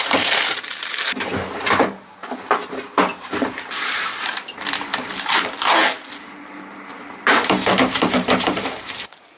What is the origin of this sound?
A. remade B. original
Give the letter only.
A